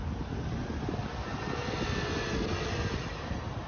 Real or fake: real